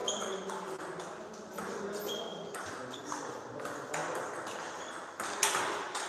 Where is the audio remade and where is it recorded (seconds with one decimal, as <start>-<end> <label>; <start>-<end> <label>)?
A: 0.0-6.1 recorded